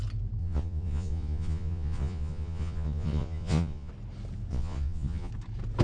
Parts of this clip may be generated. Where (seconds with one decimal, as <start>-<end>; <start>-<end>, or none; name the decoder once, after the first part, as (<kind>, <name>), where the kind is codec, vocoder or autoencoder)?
0.4-3.9 (vocoder, Vocos); 4.5-5.3